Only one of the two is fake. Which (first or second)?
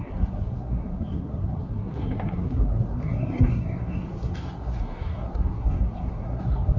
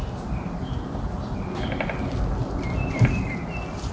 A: first